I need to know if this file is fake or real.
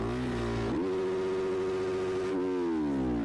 real